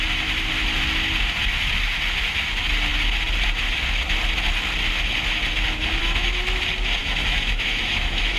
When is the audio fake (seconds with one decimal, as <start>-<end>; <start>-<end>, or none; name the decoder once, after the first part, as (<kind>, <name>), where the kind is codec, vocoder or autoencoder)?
6.0-6.6 (autoencoder, DAC-VAE); 7.0-8.4

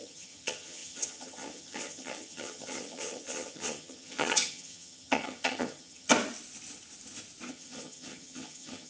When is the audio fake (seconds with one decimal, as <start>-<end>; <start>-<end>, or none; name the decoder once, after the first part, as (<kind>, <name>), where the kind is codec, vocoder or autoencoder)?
0.0-6.1 (vocoder, HiFi-GAN); 7.5-8.9

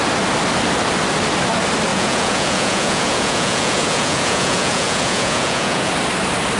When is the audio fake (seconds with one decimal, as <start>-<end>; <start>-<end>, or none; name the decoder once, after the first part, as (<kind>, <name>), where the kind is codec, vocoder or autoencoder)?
1.9-5.9 (vocoder, Vocos)

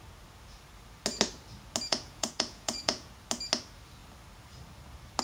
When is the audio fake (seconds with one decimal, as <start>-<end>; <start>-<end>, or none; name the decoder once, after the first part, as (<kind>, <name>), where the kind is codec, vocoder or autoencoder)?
1.9-3.1 (vocoder, Vocos)

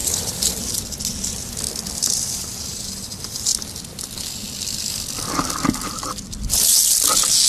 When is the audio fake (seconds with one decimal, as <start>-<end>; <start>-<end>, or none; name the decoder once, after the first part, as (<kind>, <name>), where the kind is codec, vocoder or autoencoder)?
0.0-0.5 (vocoder, BigVGAN v2)

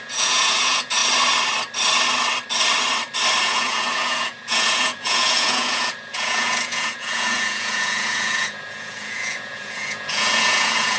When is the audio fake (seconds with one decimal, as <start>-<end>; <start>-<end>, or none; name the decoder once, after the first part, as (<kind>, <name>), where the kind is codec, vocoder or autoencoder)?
0.0-1.0 (vocoder, Vocos); 3.4-11.0

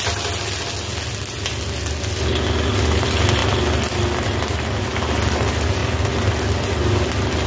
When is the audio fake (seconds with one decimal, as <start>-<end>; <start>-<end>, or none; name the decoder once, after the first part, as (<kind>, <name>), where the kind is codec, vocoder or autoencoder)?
none